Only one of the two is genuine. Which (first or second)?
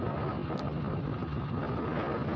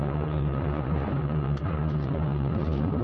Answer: first